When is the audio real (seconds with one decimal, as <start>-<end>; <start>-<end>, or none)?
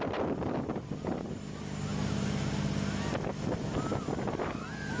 0.0-5.0